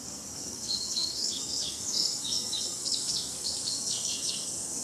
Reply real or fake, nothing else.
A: fake